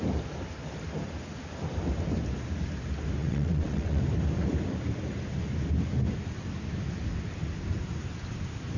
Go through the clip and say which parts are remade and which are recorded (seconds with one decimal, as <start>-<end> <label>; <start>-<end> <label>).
0.0-3.2 recorded; 3.2-4.0 remade; 4.0-8.8 recorded